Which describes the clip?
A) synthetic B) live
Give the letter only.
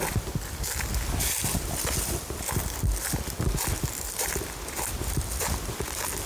B